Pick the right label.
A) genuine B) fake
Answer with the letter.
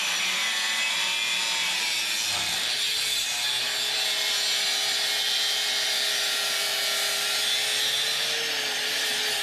A